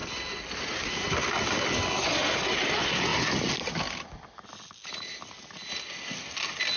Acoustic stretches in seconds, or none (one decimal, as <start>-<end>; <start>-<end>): 0.0-6.8